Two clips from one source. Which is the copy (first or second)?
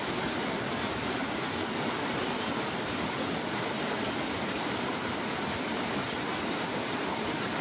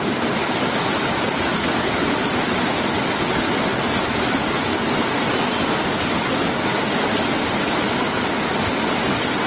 first